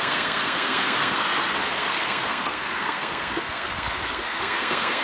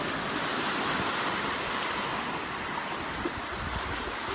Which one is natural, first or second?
second